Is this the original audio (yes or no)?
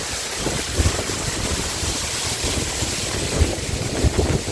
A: yes